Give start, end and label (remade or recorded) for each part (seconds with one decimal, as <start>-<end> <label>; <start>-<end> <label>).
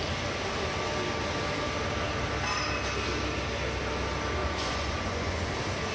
0.0-4.4 recorded; 4.4-5.5 remade; 5.5-5.9 recorded